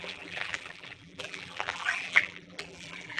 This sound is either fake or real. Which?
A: fake